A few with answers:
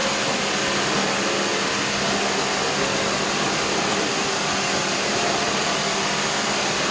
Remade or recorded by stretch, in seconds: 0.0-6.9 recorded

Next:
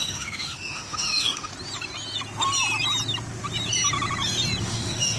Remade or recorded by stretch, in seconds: 0.0-1.5 remade; 1.5-4.6 recorded; 4.6-5.2 remade